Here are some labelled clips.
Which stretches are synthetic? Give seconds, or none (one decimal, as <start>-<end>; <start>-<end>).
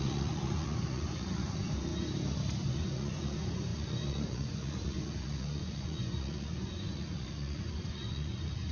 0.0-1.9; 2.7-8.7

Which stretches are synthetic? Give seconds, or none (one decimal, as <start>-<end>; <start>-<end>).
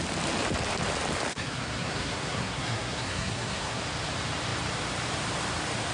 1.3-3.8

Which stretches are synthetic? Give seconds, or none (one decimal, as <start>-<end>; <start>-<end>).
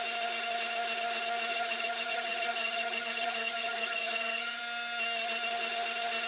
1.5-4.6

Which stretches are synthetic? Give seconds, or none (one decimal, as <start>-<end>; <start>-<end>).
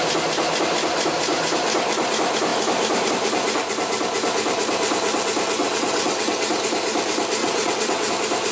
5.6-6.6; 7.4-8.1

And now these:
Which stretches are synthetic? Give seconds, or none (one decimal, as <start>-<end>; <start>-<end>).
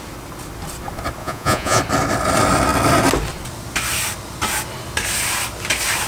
1.2-1.8